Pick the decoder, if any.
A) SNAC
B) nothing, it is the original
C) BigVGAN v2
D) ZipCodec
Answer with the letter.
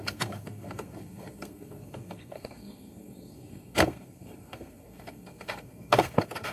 A